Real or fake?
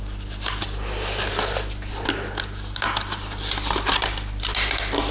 real